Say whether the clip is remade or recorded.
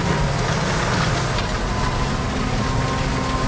recorded